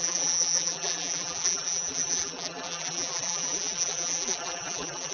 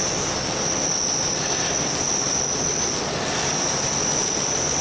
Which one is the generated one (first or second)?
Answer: first